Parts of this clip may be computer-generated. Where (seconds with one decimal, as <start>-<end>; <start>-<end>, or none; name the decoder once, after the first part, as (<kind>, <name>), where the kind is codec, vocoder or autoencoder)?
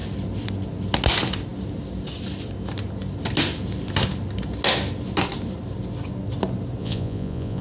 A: 6.8-7.6 (vocoder, Vocos)